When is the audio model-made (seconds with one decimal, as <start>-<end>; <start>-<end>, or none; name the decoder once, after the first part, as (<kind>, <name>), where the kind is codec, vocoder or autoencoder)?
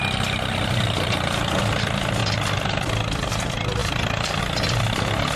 3.8-4.4 (vocoder, BigVGAN v2)